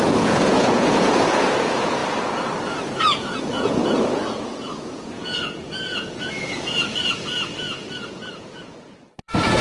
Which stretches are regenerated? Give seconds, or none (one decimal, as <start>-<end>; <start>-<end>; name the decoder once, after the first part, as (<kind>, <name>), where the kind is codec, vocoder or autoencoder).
0.0-2.0 (vocoder, Vocos); 3.0-9.6